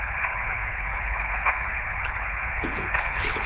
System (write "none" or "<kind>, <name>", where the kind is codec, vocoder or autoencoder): codec, HILCodec